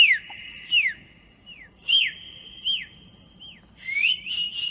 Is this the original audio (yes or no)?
yes